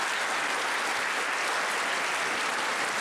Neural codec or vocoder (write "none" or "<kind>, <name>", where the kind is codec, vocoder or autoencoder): none